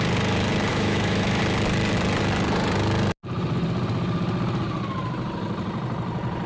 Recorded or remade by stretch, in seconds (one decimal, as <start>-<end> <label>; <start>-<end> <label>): 0.0-0.7 recorded; 0.7-1.4 remade; 1.4-6.5 recorded